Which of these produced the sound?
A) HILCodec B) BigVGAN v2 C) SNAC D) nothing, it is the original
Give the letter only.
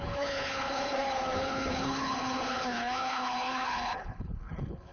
A